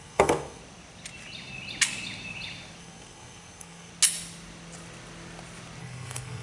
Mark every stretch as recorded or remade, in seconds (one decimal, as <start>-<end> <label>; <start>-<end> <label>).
0.0-0.6 remade; 0.6-2.8 recorded; 2.8-3.9 remade; 3.9-5.8 recorded; 5.8-6.4 remade